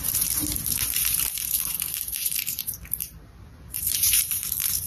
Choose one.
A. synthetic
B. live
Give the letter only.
A